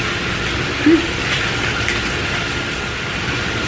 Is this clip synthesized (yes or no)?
no